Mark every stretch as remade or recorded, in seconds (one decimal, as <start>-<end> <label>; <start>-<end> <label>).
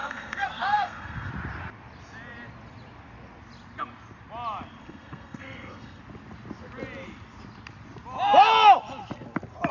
0.0-1.3 remade; 1.3-4.8 recorded; 4.8-6.0 remade; 6.0-9.7 recorded